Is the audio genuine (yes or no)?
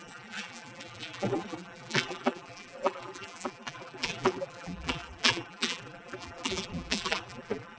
no